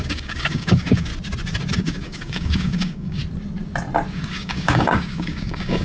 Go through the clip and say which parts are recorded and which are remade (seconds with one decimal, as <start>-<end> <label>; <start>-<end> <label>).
0.0-1.1 remade; 1.1-1.7 recorded; 1.7-3.2 remade; 3.2-4.1 recorded; 4.1-5.8 remade